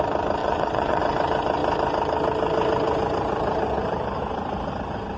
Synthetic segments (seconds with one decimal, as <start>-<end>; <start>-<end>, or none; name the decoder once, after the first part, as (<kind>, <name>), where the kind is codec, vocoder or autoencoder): 0.4-1.0 (vocoder, WaveNeXt)